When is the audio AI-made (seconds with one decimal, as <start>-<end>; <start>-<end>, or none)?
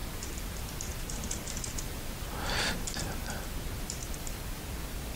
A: 0.0-3.1